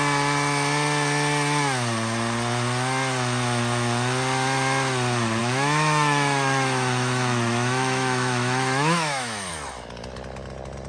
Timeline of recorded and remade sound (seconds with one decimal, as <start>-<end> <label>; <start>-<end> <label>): 0.0-5.4 recorded; 5.4-9.5 remade; 9.5-10.9 recorded